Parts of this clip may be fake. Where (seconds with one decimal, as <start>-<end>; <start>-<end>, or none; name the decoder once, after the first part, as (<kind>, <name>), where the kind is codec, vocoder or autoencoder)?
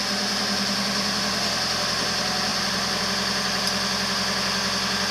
2.5-3.0 (vocoder, BigVGAN v2)